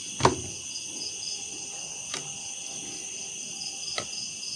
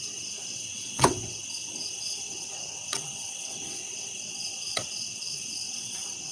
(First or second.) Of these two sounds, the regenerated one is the second